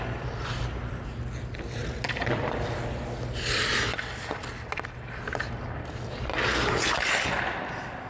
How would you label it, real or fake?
real